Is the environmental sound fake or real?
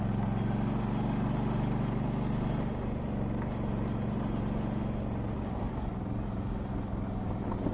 real